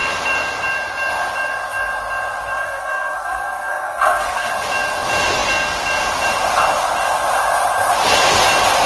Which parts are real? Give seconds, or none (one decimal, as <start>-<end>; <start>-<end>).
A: 0.0-2.5; 4.5-8.9